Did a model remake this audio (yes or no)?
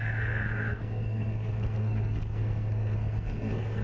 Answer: yes